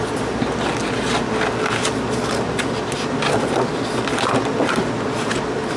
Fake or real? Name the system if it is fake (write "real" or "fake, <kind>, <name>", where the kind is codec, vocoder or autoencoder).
real